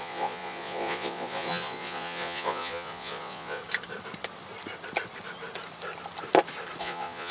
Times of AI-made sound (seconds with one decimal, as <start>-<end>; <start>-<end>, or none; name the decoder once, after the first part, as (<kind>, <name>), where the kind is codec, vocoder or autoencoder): 0.0-3.6 (vocoder, Vocos); 6.8-7.3